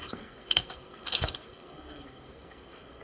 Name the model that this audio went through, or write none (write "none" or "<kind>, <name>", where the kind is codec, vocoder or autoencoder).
codec, SNAC